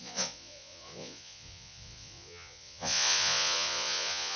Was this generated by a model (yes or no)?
yes